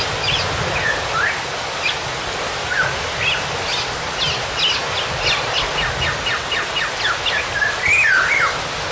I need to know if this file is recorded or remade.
recorded